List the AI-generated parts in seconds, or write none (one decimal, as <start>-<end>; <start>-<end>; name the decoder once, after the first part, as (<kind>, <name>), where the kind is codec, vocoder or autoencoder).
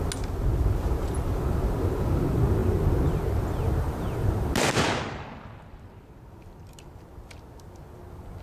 0.8-1.4 (vocoder, BigVGAN v2)